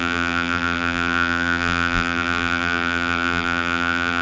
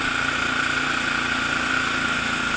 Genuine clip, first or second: second